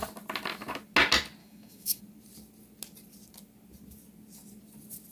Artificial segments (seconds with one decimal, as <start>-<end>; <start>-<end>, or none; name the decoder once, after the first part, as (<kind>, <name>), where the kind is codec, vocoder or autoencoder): 1.4-2.0 (autoencoder, DAC-VAE)